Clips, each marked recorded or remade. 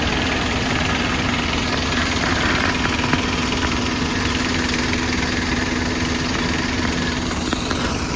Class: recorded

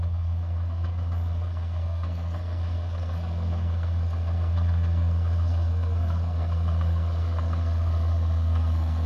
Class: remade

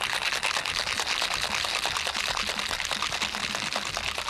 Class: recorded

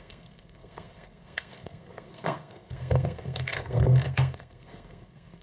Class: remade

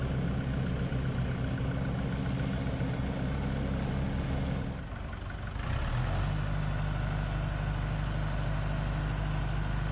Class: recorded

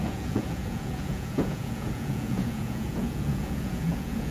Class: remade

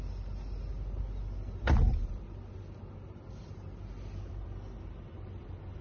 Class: recorded